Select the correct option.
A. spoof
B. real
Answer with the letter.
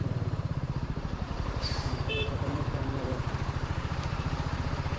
A